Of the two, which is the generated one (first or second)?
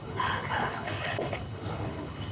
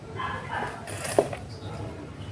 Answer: first